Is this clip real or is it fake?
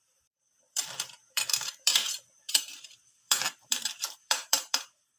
fake